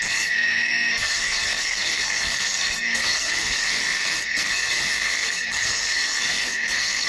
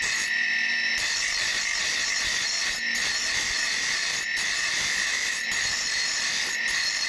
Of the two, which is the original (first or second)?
second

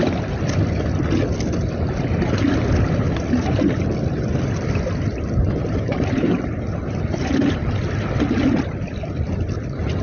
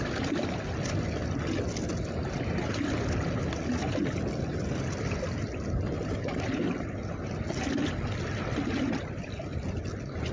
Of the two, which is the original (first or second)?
second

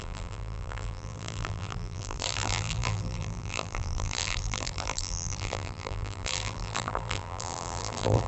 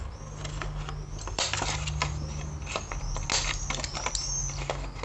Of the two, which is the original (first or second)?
second